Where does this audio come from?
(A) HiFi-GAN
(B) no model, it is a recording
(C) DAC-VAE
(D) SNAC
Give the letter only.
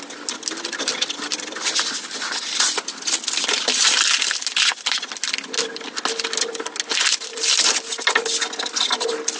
B